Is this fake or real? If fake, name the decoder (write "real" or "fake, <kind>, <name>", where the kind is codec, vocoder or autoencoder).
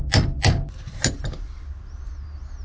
real